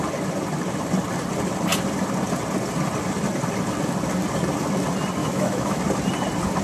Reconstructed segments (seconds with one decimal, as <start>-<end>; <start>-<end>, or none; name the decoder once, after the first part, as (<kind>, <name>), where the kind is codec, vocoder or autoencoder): 5.2-5.8 (autoencoder, DAC-VAE)